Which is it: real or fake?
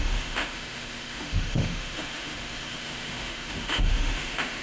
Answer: fake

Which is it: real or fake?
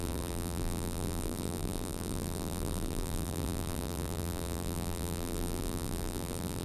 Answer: fake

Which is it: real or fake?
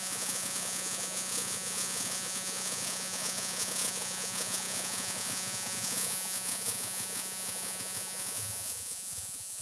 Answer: fake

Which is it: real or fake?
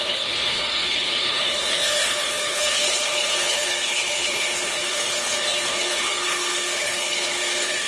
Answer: fake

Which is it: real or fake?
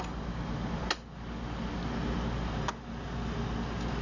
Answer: real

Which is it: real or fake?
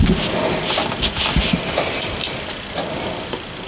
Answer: real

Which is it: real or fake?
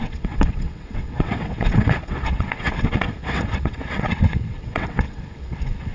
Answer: fake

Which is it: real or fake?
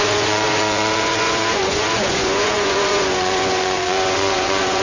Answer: fake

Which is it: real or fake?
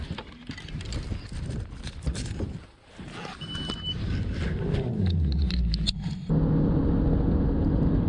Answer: real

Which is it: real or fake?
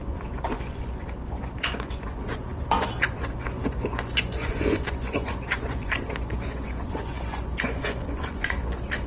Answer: fake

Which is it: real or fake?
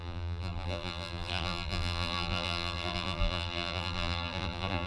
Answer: fake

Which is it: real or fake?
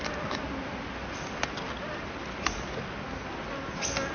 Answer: real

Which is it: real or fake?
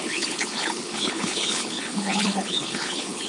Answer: fake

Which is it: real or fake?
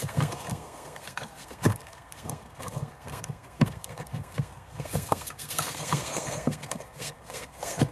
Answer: fake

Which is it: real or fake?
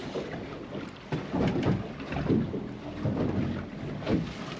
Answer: real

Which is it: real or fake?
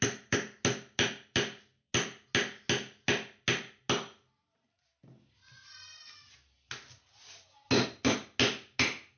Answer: real